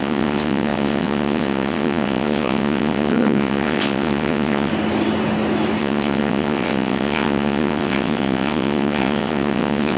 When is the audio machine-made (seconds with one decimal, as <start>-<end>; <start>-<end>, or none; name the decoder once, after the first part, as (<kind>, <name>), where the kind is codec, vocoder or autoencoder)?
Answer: 0.0-4.7 (vocoder, WaveNeXt); 5.8-10.0